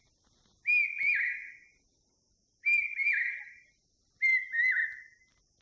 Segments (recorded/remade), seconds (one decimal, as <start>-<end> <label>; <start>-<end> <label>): 0.0-5.6 recorded